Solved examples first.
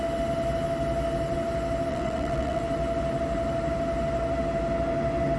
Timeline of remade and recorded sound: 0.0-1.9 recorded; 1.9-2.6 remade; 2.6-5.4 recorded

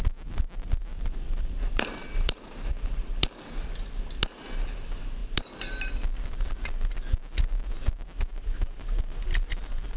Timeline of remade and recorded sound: 0.0-0.9 recorded; 0.9-3.7 remade; 3.7-5.2 recorded; 5.2-5.7 remade; 5.7-10.0 recorded

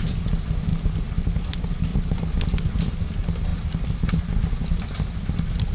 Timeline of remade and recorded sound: 0.0-0.7 recorded; 0.7-1.4 remade; 1.4-1.9 recorded; 1.9-2.4 remade; 2.4-5.7 recorded